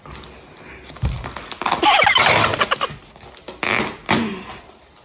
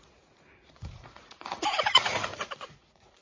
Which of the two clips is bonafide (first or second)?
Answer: first